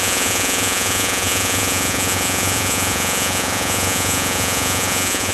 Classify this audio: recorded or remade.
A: remade